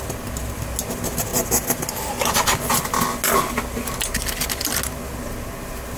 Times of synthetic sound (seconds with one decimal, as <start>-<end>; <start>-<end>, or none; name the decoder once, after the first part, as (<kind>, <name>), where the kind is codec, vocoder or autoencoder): none